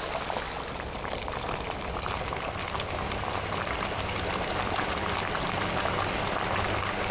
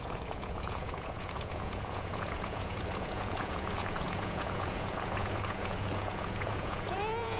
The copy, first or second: second